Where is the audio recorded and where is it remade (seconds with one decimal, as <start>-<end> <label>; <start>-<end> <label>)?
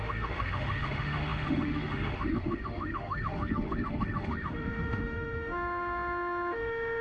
0.0-7.0 remade